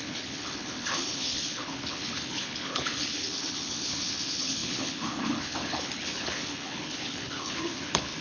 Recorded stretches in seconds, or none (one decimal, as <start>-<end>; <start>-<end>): none